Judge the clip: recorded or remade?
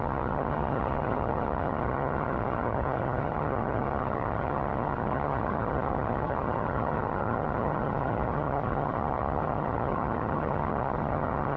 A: remade